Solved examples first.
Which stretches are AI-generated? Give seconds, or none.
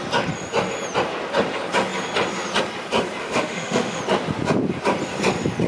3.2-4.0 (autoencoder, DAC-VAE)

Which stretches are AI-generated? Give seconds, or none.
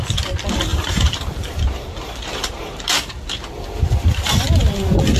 0.7-3.8 (vocoder, BigVGAN v2)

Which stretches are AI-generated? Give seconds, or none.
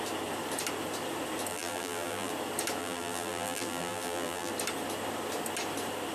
1.5-2.3 (vocoder, BigVGAN v2); 2.8-4.5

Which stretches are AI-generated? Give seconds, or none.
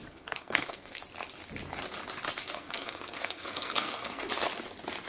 0.0-1.0 (codec, SNAC); 2.4-4.2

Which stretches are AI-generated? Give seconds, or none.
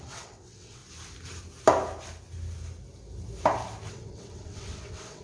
0.0-0.8 (vocoder, WaveNeXt); 3.9-5.2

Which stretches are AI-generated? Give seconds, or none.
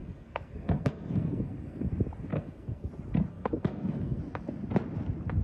0.0-1.9 (codec, SNAC); 2.3-2.9; 3.3-4.2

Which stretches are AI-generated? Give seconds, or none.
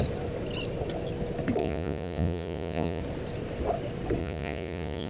1.6-3.0 (vocoder, Vocos); 4.2-5.1